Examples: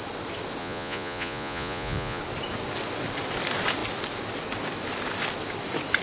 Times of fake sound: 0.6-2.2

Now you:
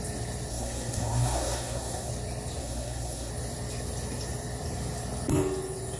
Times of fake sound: 0.5-2.1; 2.6-3.3

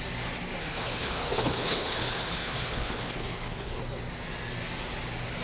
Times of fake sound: 0.6-3.8

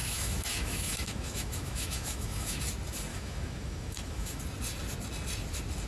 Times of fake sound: 0.0-2.6; 3.1-4.4

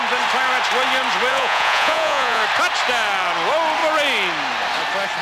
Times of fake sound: 1.3-2.4

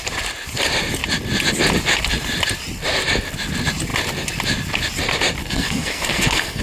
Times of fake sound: 5.4-6.6

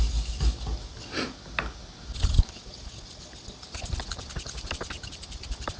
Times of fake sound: none